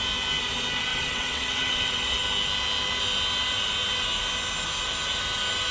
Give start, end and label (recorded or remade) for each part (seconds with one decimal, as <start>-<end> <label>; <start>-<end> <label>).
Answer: 0.0-0.9 recorded; 0.9-2.2 remade; 2.2-5.7 recorded